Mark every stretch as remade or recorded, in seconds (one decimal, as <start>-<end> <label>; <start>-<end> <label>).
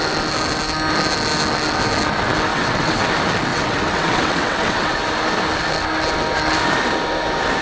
0.0-2.5 recorded; 2.5-3.0 remade; 3.0-3.5 recorded; 3.5-5.0 remade; 5.0-7.6 recorded